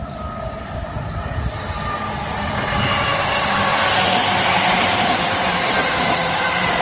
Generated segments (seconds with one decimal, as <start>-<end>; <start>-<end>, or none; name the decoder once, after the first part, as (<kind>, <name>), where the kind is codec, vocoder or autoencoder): none